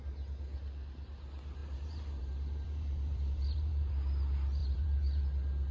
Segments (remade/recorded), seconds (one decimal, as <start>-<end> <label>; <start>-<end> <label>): 0.0-1.6 recorded; 1.6-3.9 remade; 3.9-4.6 recorded; 4.6-5.2 remade; 5.2-5.7 recorded